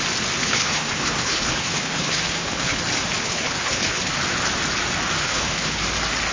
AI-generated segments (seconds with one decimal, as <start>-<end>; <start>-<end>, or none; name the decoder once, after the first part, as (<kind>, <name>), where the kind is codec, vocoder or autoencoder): 0.4-2.8 (codec, HILCodec); 3.2-4.1; 5.2-5.8